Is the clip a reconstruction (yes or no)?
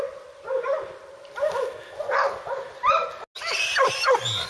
no